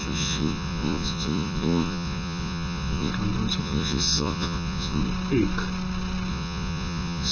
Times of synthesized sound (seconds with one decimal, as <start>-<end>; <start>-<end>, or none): 0.0-3.1; 3.6-5.0; 6.3-7.3